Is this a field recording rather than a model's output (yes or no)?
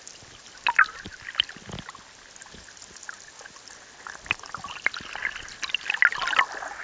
yes